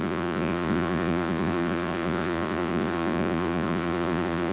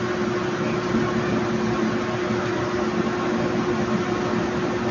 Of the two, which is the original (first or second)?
second